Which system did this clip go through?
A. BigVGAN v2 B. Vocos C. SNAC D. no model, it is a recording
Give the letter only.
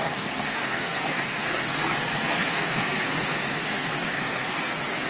C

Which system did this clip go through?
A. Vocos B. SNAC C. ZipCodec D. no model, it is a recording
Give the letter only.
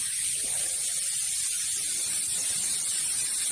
D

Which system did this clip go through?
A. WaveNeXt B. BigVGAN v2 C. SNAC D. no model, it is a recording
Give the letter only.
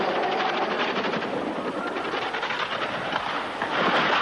D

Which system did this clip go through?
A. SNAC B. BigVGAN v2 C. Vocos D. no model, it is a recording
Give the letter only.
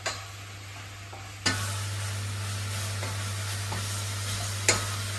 D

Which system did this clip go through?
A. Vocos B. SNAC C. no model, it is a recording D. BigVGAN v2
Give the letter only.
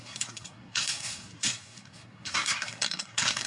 B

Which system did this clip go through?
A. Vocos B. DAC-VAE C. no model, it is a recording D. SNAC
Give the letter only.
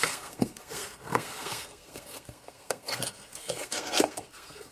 D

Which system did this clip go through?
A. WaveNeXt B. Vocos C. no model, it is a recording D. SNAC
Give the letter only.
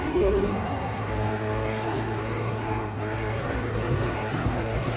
D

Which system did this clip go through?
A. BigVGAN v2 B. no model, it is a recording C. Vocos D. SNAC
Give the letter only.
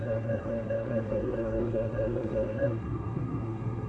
D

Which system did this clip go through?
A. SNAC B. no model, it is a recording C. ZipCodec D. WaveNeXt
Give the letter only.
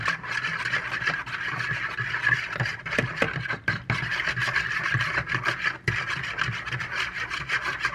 B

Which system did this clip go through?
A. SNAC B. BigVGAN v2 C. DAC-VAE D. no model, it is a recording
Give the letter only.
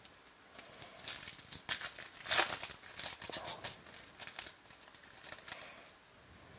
D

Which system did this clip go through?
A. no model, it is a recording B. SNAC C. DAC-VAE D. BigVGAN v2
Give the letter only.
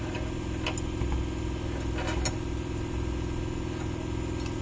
A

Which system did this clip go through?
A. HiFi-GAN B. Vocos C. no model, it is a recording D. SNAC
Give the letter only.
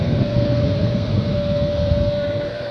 D